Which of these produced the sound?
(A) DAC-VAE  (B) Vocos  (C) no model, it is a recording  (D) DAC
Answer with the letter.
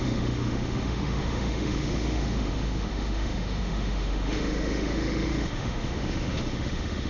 A